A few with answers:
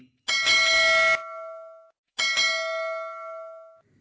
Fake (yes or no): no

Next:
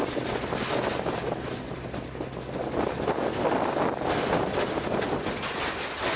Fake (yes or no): no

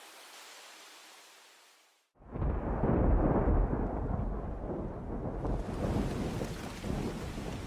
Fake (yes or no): no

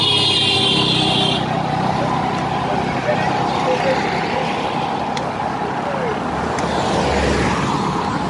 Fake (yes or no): no